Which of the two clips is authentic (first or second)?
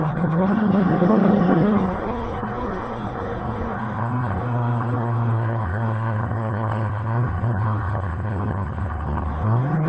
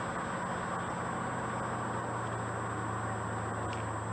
second